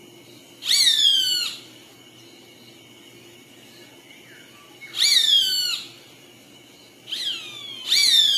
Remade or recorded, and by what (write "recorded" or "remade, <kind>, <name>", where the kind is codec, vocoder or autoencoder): recorded